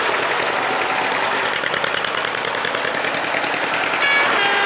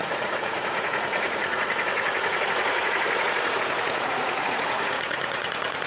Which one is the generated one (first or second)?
second